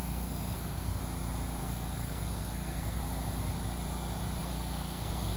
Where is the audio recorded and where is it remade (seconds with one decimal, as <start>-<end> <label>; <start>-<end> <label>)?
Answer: 0.0-1.0 remade; 1.0-1.6 recorded; 1.6-3.0 remade; 3.0-4.4 recorded; 4.4-5.4 remade

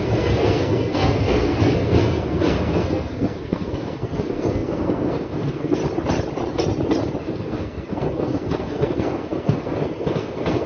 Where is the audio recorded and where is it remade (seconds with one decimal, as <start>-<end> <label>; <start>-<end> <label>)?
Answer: 0.0-5.8 remade; 5.8-7.2 recorded; 7.2-10.7 remade

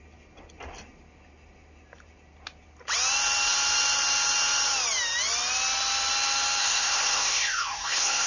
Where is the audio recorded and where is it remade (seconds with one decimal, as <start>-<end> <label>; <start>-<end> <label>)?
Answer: 0.0-6.6 recorded; 6.6-8.3 remade

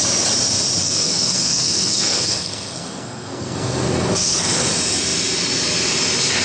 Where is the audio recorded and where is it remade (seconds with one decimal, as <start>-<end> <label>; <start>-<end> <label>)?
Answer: 0.0-0.8 recorded; 0.8-4.6 remade; 4.6-6.4 recorded

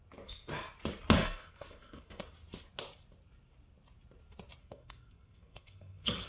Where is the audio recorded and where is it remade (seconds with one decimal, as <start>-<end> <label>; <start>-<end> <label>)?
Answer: 0.0-1.2 recorded; 1.2-2.2 remade; 2.2-4.6 recorded; 4.6-6.3 remade

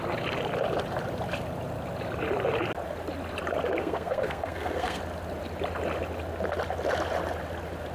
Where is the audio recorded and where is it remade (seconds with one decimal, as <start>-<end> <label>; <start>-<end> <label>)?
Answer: 0.0-3.8 recorded; 3.8-5.0 remade; 5.0-7.9 recorded

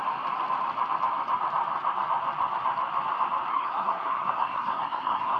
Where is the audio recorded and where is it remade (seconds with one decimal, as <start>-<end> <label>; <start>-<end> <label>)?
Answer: 0.0-3.5 recorded; 3.5-5.4 remade

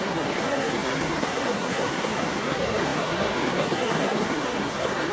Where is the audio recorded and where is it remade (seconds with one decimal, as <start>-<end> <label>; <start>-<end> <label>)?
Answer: 0.0-5.1 remade